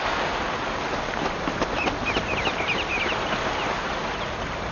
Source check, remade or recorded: recorded